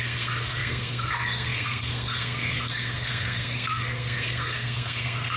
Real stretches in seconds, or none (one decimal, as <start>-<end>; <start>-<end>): none